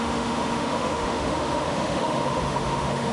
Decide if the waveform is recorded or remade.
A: remade